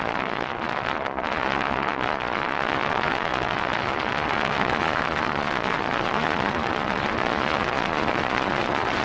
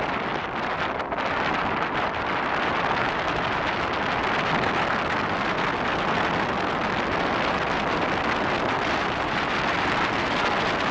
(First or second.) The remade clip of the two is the first